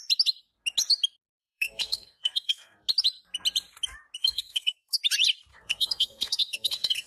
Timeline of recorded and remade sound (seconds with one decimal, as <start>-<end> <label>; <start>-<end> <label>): 0.0-1.4 recorded; 1.4-2.9 remade; 2.9-4.2 recorded; 4.2-5.0 remade; 5.0-5.5 recorded; 5.5-7.1 remade